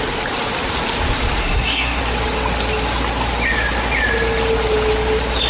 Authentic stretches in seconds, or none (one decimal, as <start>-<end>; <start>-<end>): 0.0-1.4; 2.0-5.5